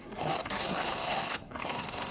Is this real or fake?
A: fake